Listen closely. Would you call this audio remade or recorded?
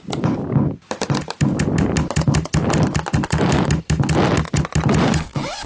recorded